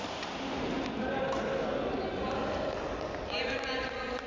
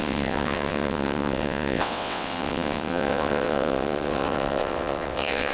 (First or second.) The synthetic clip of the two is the second